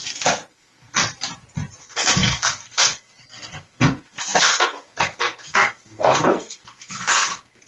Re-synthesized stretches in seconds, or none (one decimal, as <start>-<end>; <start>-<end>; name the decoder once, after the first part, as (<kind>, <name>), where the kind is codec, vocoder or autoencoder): 0.5-1.0 (codec, SNAC); 1.8-7.7